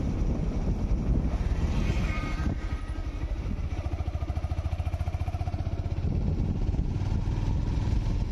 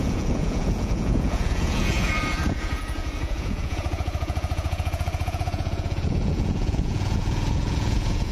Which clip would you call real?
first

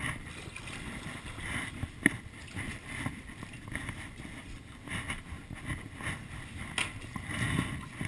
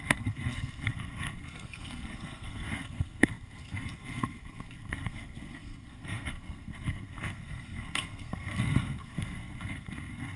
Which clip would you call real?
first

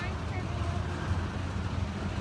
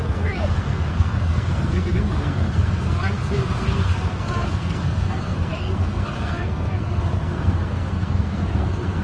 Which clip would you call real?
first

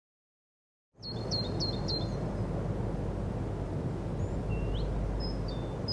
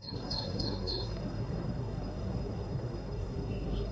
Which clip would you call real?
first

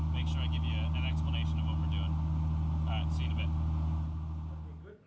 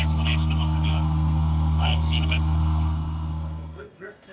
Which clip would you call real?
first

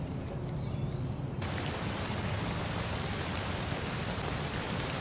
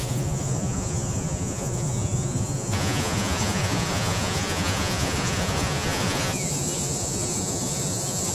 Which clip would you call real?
first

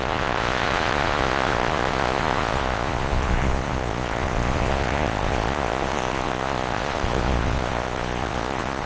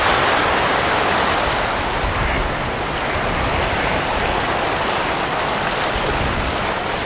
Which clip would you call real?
second